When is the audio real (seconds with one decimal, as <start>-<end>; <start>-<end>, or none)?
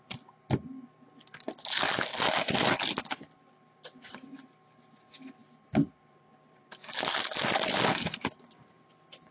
0.0-5.4; 8.8-9.3